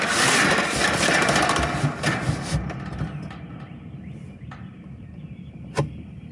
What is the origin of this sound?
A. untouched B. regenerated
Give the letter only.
A